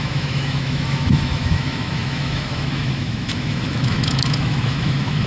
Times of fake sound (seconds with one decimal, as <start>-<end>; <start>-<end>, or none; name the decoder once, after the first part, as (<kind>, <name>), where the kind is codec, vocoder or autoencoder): 0.0-5.3 (autoencoder, DAC-VAE)